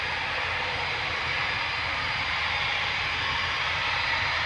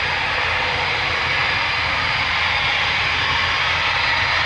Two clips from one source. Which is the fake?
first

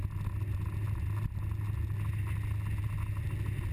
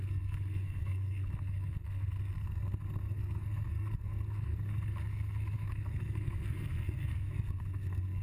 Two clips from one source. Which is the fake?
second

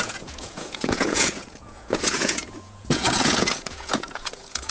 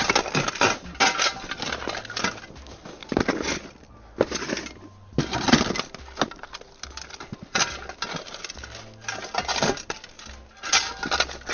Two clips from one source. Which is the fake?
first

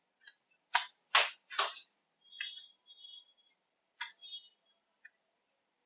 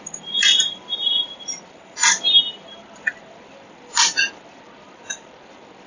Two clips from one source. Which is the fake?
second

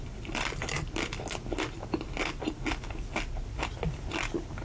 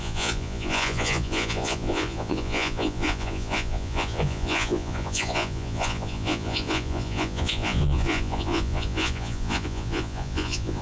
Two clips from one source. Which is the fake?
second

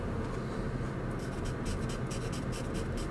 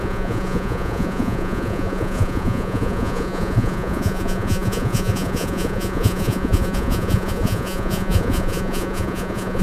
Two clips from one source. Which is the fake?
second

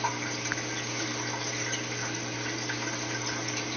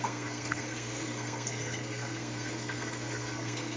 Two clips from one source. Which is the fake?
second